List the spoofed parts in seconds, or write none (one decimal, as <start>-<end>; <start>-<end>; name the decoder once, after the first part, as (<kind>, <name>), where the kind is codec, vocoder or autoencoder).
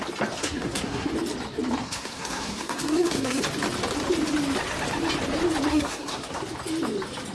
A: 0.4-1.1 (codec, SNAC); 1.8-3.4; 5.7-6.4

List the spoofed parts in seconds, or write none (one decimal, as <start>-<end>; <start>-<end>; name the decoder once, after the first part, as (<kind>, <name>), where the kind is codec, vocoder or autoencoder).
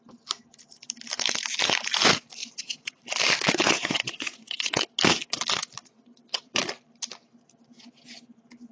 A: 2.4-3.0 (vocoder, WaveNeXt); 3.6-4.8; 5.8-6.6